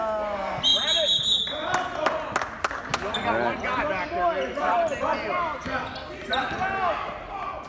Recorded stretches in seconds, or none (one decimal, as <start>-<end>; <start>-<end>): 0.0-7.7